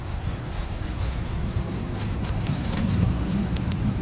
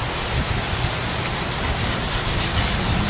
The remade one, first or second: first